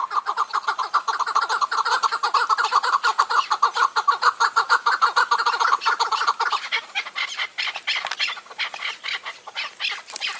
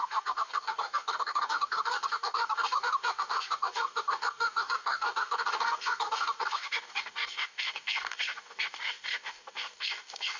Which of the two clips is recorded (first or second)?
first